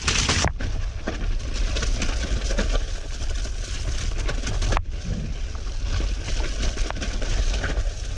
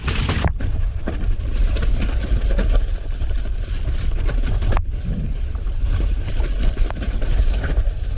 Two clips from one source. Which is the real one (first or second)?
first